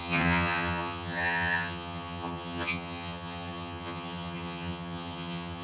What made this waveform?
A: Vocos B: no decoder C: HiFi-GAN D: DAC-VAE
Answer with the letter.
C